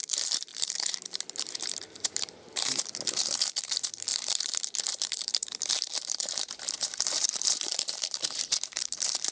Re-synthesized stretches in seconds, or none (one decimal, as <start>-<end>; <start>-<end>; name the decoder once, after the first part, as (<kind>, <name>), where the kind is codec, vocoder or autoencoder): 0.0-9.3 (vocoder, BigVGAN v2)